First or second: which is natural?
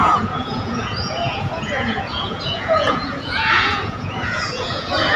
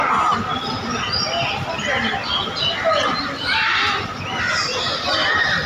second